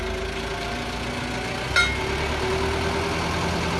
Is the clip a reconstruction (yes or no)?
no